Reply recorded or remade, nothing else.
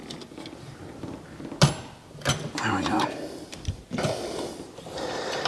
recorded